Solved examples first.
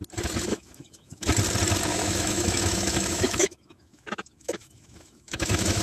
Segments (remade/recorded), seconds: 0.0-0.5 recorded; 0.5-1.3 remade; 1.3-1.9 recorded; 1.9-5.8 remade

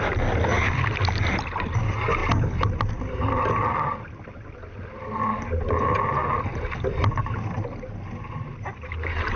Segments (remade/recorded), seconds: 0.0-9.4 recorded

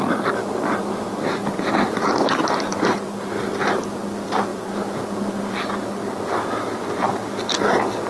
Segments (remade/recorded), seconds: 0.0-8.1 recorded

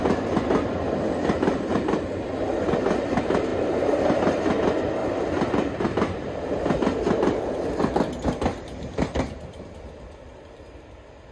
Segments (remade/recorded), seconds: 0.0-1.7 recorded; 1.7-2.4 remade; 2.4-3.5 recorded; 3.5-4.4 remade; 4.4-8.5 recorded; 8.5-9.7 remade; 9.7-11.3 recorded

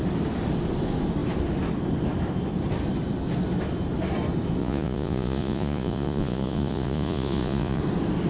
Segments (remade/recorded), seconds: 0.0-4.6 recorded; 4.6-7.8 remade; 7.8-8.3 recorded

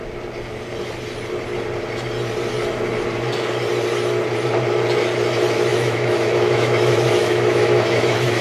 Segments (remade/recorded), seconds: 0.0-5.7 recorded; 5.7-8.4 remade

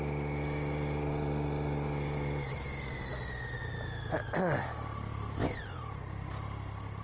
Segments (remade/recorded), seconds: 0.0-7.0 recorded